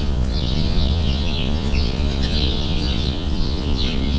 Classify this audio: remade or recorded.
remade